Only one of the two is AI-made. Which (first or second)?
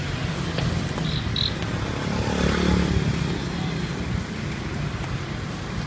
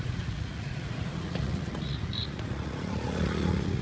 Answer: second